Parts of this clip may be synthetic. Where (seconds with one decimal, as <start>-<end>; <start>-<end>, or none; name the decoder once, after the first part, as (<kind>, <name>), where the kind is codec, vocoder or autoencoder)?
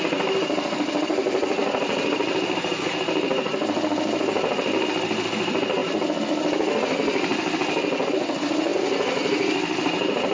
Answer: none